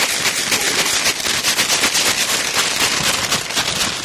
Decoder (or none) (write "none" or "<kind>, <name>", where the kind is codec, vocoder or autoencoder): none